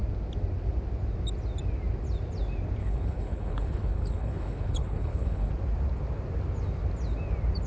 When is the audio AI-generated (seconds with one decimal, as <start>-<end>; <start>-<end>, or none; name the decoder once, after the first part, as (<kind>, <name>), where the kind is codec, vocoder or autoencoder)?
2.8-5.5 (codec, HILCodec)